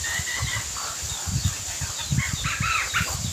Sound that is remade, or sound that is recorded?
recorded